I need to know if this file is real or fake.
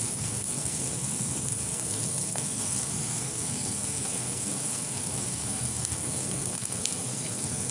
fake